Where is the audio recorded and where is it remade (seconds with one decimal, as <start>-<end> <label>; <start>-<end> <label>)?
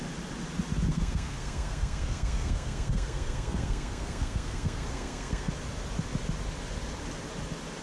0.0-0.9 recorded; 0.9-5.5 remade; 5.5-7.8 recorded